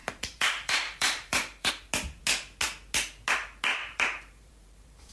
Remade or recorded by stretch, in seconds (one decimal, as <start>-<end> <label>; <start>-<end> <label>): 0.0-1.7 remade; 1.7-3.7 recorded; 3.7-5.1 remade